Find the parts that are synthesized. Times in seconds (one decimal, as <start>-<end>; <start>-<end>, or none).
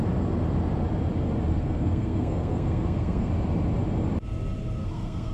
1.5-3.3; 4.8-5.3